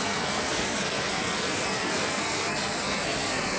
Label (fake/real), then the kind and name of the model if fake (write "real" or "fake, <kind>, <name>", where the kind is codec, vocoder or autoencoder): fake, codec, SNAC